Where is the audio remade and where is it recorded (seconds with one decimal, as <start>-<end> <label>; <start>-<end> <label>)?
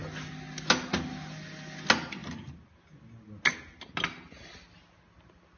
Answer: 0.0-5.6 recorded